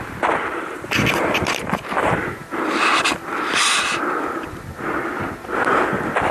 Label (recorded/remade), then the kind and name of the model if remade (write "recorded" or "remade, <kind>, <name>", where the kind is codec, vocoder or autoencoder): remade, vocoder, BigVGAN v2